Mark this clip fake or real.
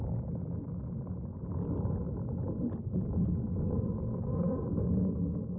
real